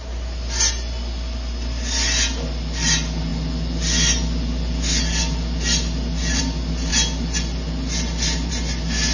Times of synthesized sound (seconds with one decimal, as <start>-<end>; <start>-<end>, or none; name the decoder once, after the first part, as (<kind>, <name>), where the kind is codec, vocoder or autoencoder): none